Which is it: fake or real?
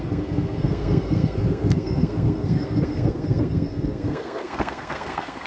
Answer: fake